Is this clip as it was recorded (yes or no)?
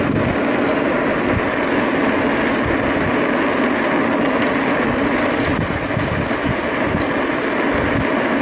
yes